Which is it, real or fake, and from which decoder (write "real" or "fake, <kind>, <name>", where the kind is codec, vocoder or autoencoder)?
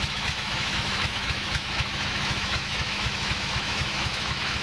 fake, autoencoder, DAC-VAE